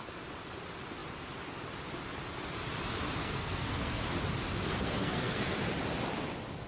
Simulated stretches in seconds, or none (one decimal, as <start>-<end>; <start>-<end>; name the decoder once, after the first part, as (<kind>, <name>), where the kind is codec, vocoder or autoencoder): 3.2-4.0 (codec, SNAC); 4.7-5.6